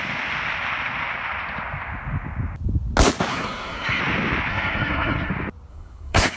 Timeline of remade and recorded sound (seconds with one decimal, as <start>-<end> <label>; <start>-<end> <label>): 0.0-3.3 recorded; 3.3-4.0 remade; 4.0-4.5 recorded; 4.5-5.3 remade; 5.3-5.7 recorded; 5.7-6.4 remade

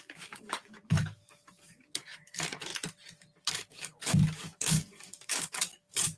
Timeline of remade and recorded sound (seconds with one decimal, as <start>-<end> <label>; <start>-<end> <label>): 0.0-2.7 remade; 2.7-3.5 recorded; 3.5-6.2 remade

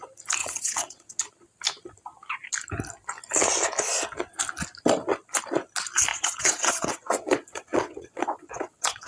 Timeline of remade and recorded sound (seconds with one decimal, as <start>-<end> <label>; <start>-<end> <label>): 0.0-0.4 recorded; 0.4-1.2 remade; 1.2-6.1 recorded; 6.1-9.1 remade